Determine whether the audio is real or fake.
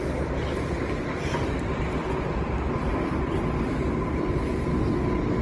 real